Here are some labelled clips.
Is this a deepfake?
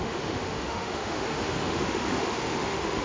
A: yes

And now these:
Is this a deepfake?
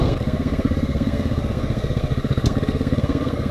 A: yes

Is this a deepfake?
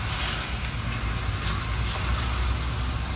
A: no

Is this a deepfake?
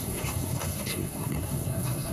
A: yes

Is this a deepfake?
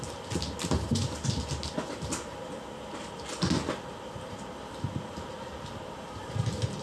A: no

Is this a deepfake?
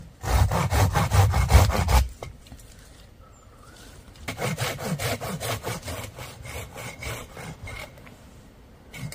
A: yes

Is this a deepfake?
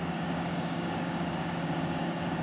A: yes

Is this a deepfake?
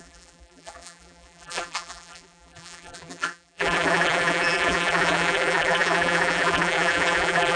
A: yes